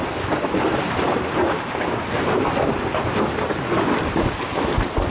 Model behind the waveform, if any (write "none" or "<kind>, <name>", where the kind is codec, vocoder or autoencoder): none